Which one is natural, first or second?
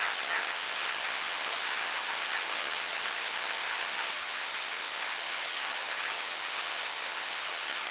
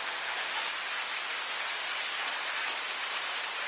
second